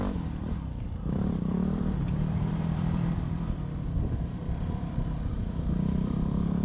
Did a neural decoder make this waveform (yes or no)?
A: yes